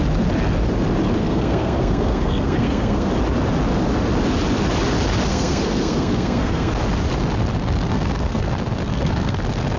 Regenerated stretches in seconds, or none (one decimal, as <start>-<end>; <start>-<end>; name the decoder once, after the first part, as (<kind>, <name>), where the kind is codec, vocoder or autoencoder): 1.2-3.1 (codec, SNAC); 5.3-6.7; 7.9-8.5; 8.9-9.4